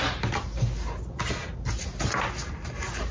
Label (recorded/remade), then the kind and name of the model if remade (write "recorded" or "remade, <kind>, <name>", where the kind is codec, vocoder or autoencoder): recorded